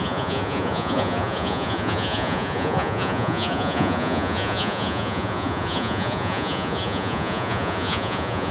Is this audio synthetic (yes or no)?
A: yes